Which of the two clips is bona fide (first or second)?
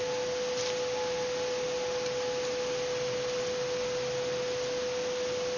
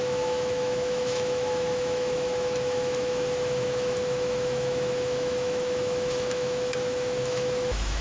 first